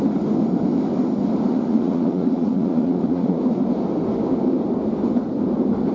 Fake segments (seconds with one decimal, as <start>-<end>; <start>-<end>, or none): 1.5-3.4